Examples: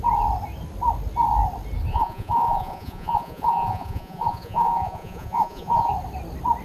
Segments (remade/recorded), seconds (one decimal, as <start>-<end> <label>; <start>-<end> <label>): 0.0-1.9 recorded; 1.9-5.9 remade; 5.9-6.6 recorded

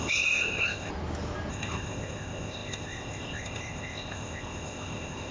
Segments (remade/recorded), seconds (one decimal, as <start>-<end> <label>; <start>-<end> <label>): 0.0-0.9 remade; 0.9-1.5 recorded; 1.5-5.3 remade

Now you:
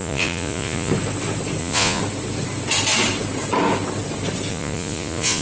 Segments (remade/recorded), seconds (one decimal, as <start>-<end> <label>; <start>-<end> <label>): 0.0-0.9 remade; 0.9-1.6 recorded; 1.6-2.0 remade; 2.0-4.5 recorded; 4.5-5.4 remade

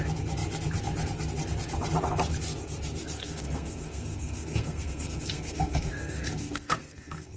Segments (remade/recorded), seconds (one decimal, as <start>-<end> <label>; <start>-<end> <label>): 0.0-3.2 recorded; 3.2-7.4 remade

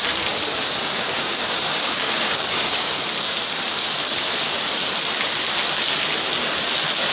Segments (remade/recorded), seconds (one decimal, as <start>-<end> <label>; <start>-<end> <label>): 0.0-0.5 recorded; 0.5-3.0 remade; 3.0-7.1 recorded